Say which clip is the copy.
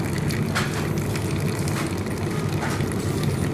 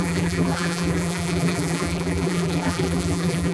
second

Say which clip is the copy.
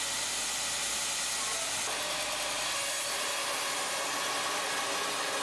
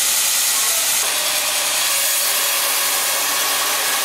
second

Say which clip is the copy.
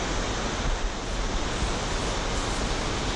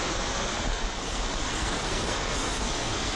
second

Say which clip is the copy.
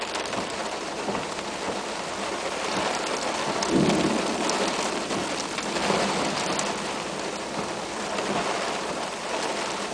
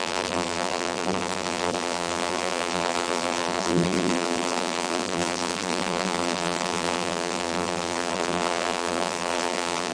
second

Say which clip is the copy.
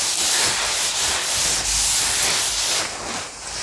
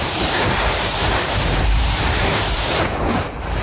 second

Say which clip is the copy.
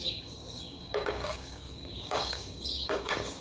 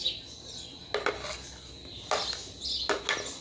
first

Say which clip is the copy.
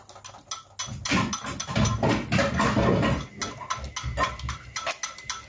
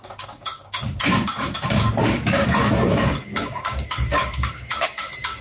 second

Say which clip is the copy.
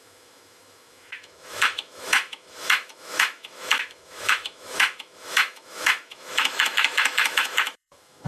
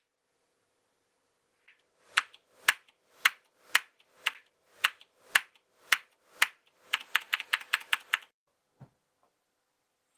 first